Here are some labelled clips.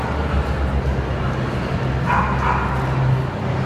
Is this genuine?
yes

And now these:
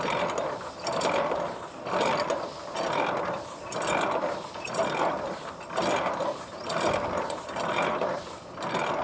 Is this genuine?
yes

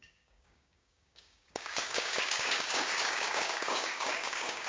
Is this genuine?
no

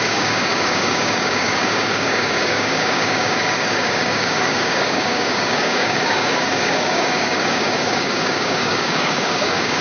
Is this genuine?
no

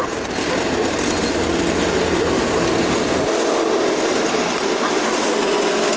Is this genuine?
yes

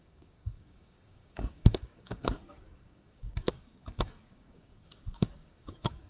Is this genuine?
no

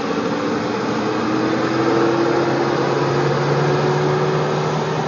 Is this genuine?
yes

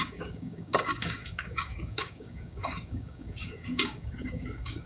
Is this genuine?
no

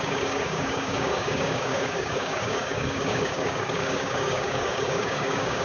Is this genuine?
no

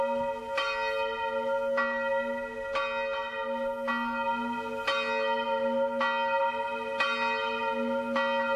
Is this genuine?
yes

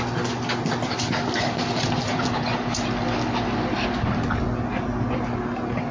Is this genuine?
yes